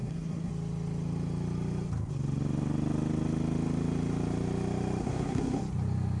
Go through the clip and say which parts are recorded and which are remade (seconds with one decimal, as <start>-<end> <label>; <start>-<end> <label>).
0.0-0.5 remade; 0.5-5.0 recorded; 5.0-5.6 remade; 5.6-6.2 recorded